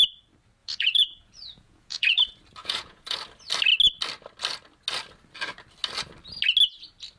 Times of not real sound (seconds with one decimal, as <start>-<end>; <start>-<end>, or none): 0.6-2.2; 2.6-3.2